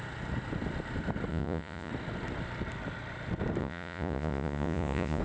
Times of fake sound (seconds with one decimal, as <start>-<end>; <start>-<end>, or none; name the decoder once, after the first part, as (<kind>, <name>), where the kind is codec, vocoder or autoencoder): 1.3-1.9 (vocoder, Vocos); 3.6-5.2